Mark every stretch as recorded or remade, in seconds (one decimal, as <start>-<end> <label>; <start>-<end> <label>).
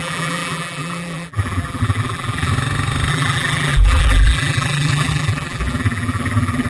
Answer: 0.0-2.5 remade; 2.5-3.1 recorded; 3.1-6.7 remade